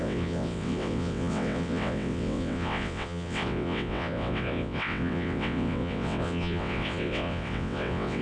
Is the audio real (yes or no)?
no